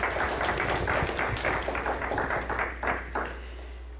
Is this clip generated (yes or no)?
no